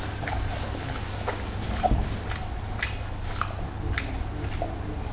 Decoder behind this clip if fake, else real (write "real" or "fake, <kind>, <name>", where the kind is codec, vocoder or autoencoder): real